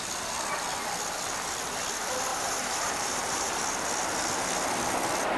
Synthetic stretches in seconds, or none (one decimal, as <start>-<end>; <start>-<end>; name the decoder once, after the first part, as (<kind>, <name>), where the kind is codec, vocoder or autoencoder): 2.3-3.6 (vocoder, BigVGAN v2)